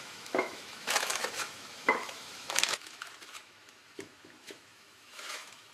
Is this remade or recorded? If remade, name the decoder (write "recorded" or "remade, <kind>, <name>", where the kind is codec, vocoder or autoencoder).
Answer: remade, autoencoder, DAC-VAE